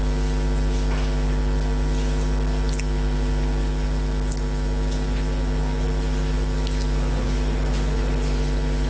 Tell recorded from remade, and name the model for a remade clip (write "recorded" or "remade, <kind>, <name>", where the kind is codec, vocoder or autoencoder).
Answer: recorded